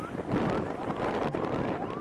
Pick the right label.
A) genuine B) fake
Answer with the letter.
B